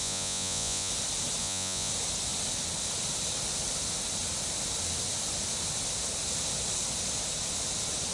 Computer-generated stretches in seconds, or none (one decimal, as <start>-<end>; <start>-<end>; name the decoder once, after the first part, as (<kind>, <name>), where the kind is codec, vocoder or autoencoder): 0.0-0.9 (vocoder, Vocos); 1.4-1.9